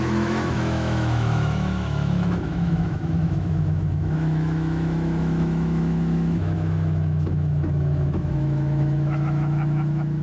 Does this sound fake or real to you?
fake